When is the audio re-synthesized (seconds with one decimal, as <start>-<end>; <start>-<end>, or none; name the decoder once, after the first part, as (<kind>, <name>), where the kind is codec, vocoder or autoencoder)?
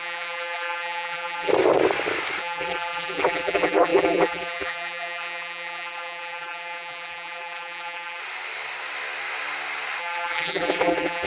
0.0-1.5 (vocoder, BigVGAN v2); 2.4-8.2; 10.0-11.3